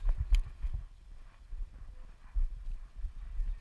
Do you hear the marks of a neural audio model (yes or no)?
no